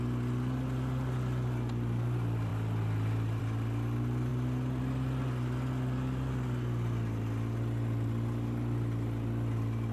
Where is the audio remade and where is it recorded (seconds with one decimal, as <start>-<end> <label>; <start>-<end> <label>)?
0.0-9.9 recorded